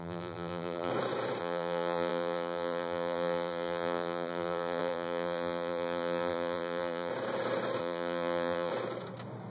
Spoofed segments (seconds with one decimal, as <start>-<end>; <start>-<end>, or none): 0.0-0.9; 1.4-7.1; 7.8-8.7